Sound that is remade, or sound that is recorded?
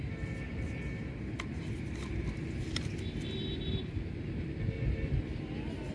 recorded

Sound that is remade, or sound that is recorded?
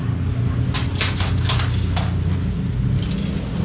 recorded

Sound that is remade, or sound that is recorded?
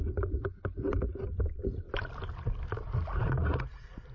recorded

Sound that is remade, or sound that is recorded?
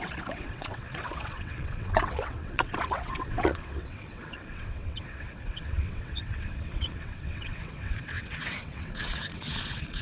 remade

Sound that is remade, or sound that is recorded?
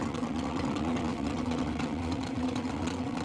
remade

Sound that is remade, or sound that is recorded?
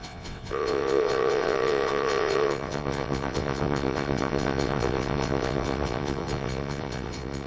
remade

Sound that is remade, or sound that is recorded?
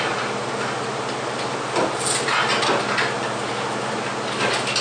recorded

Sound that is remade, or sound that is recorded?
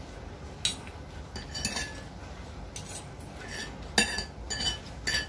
recorded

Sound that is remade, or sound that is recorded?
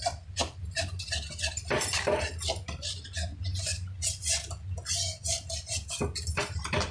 recorded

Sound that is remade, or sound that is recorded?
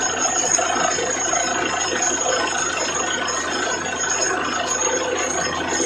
recorded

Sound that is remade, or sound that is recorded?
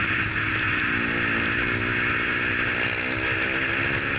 recorded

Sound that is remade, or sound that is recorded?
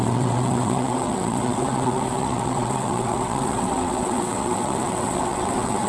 remade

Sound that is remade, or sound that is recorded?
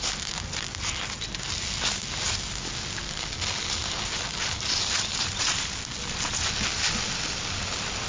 recorded